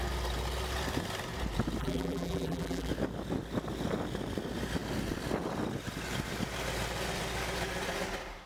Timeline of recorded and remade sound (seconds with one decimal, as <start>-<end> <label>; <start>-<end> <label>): 0.0-1.8 recorded; 1.8-2.9 remade; 2.9-8.5 recorded